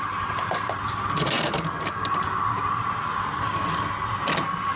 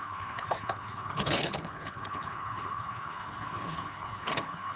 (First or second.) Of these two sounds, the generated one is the second